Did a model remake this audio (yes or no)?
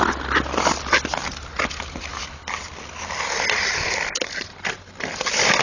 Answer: no